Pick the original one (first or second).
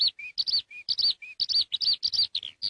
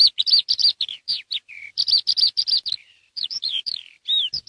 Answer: first